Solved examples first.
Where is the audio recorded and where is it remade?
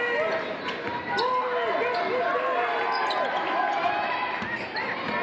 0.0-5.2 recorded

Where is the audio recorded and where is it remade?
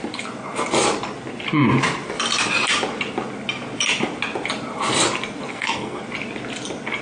0.0-5.5 recorded; 5.5-6.0 remade; 6.0-7.0 recorded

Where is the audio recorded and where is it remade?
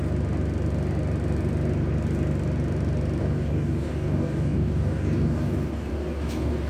0.0-3.2 recorded; 3.2-6.7 remade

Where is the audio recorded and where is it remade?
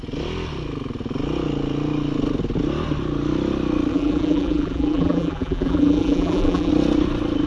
0.0-3.9 recorded; 3.9-6.7 remade; 6.7-7.5 recorded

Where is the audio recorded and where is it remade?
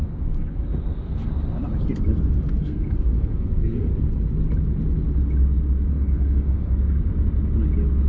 0.0-1.3 remade; 1.3-2.6 recorded; 2.6-3.9 remade; 3.9-5.9 recorded; 5.9-7.1 remade; 7.1-8.1 recorded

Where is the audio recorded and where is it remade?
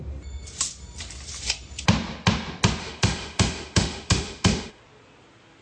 0.0-2.8 recorded; 2.8-4.8 remade; 4.8-5.6 recorded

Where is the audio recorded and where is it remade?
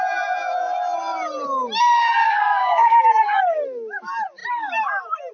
0.0-2.2 recorded; 2.2-3.4 remade; 3.4-5.3 recorded